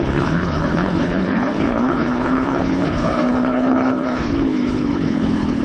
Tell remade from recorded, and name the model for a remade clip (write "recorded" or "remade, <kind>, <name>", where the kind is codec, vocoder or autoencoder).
remade, codec, HILCodec